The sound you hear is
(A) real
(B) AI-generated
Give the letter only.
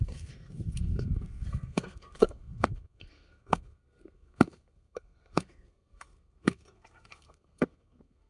B